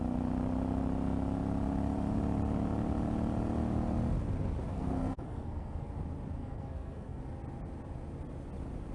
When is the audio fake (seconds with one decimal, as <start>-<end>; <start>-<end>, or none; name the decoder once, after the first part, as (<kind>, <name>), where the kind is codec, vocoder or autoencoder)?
4.7-5.9 (codec, SNAC); 6.4-7.2